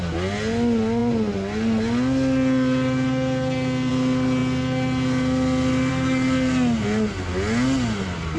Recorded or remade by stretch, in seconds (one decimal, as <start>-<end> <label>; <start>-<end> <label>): 0.0-8.4 recorded